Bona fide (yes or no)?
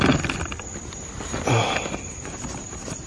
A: yes